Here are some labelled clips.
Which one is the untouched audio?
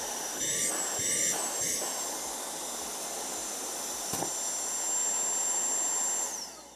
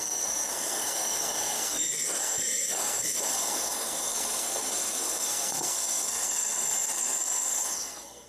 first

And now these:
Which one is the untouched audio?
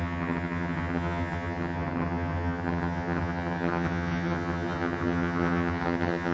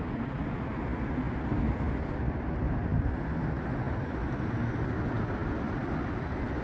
second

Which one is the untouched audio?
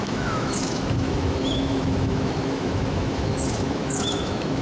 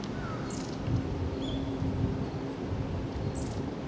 second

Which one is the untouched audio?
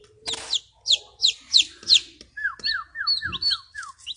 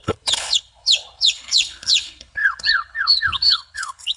first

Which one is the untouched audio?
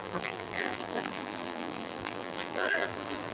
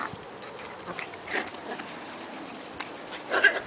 second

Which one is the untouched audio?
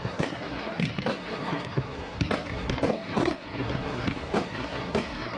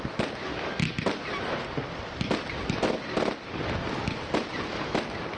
second